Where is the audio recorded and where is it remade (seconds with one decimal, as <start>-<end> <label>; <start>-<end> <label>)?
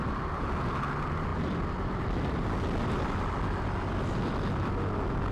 0.0-5.3 recorded